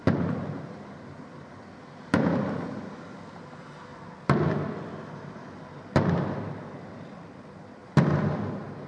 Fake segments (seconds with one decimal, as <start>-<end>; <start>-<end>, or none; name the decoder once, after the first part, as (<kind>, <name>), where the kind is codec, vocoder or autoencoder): none